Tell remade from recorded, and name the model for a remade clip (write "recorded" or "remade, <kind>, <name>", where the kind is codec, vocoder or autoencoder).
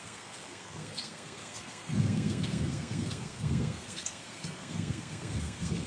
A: remade, codec, SNAC